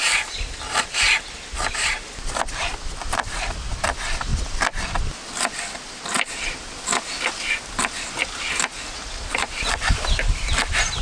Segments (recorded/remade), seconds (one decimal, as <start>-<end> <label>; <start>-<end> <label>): 0.0-11.0 recorded